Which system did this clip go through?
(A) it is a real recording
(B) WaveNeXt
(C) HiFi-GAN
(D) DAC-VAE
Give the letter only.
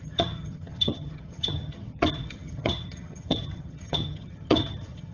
C